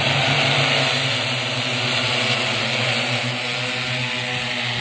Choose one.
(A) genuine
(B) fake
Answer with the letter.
A